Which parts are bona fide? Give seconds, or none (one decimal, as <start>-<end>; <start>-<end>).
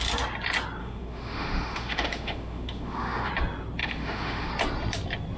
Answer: 0.0-0.8; 3.3-3.8; 4.5-5.4